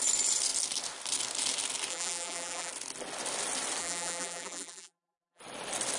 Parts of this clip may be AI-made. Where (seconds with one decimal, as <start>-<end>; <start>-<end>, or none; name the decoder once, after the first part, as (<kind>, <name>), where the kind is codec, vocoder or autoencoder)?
1.9-2.7 (vocoder, BigVGAN v2); 3.8-5.4